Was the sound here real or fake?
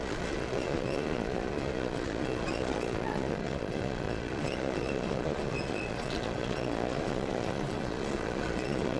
fake